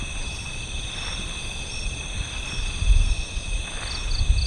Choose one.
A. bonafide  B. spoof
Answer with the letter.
A